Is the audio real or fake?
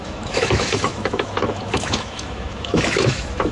fake